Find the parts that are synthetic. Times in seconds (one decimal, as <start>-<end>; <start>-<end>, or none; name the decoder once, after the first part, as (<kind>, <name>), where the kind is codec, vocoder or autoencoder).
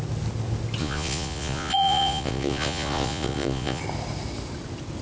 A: 0.8-3.8 (vocoder, Vocos)